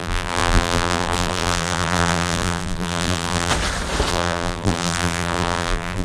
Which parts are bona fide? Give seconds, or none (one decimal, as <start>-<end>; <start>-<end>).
3.5-4.1